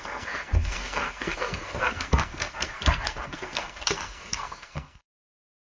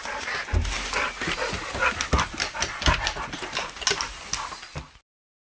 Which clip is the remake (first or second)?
first